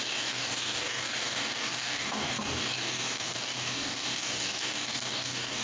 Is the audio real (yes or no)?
no